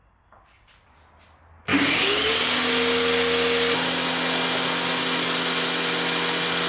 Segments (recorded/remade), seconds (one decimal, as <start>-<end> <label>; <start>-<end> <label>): 0.0-1.7 recorded; 1.7-2.3 remade; 2.3-6.7 recorded